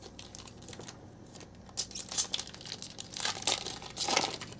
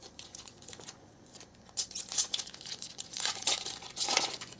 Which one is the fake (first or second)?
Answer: second